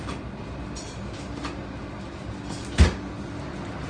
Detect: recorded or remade recorded